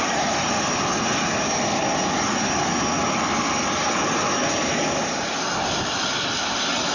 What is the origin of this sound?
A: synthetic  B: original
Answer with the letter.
B